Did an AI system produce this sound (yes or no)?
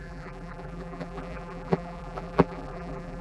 yes